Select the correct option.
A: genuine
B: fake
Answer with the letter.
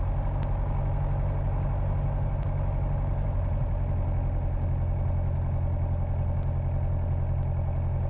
A